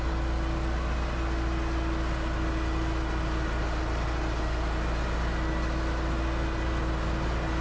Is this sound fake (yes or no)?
no